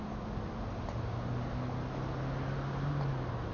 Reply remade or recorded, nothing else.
recorded